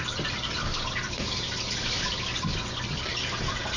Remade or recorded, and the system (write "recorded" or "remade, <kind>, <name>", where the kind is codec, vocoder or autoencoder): recorded